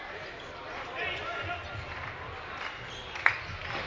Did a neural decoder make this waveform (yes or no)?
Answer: no